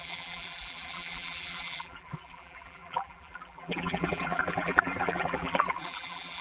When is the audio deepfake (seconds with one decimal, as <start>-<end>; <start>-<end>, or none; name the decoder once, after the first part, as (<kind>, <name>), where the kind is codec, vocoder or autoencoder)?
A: 0.0-6.4 (vocoder, BigVGAN v2)